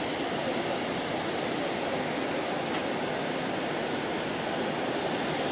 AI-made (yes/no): no